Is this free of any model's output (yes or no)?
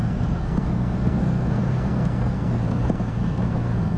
no